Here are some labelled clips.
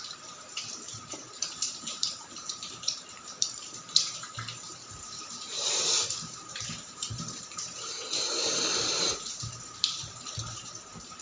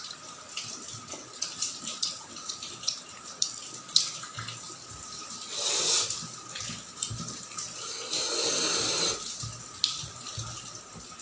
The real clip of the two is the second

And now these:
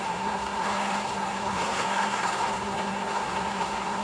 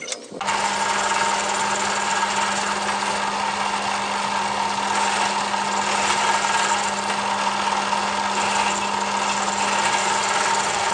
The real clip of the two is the second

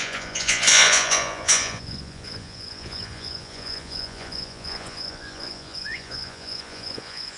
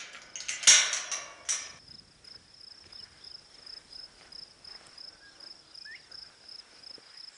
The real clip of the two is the second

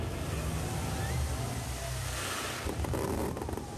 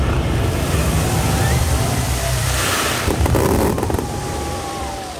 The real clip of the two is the first